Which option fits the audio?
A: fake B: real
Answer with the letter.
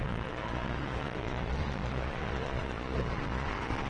A